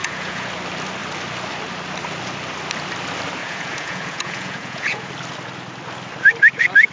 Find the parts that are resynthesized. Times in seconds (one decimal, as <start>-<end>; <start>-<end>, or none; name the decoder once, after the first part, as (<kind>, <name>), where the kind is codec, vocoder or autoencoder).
0.0-0.5 (vocoder, Vocos); 3.4-5.1